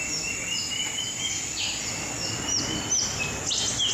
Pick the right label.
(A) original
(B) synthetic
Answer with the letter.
A